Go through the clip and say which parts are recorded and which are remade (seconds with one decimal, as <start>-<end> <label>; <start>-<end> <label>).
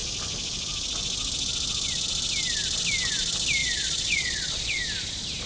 0.0-3.6 recorded; 3.6-4.8 remade; 4.8-5.5 recorded